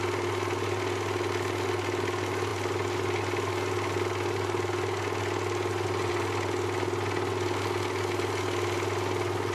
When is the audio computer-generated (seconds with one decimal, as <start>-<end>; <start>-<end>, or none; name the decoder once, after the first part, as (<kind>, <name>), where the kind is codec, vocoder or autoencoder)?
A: none